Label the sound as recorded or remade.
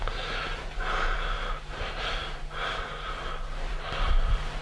recorded